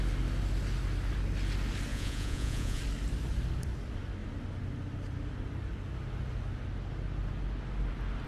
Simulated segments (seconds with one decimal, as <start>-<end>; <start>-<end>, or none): 1.9-2.8